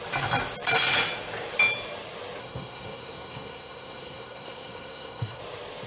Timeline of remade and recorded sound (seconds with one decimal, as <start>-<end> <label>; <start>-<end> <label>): 0.0-2.4 recorded; 2.4-5.4 remade; 5.4-5.9 recorded